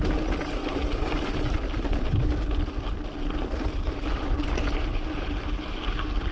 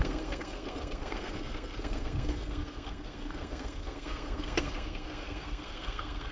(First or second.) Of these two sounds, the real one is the first